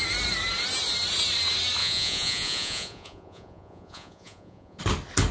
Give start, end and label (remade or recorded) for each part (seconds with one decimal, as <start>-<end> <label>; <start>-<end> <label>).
0.0-1.8 recorded; 1.8-4.8 remade; 4.8-5.3 recorded